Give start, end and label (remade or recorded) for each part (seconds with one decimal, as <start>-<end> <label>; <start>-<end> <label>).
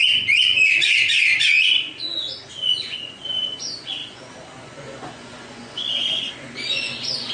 0.0-7.3 remade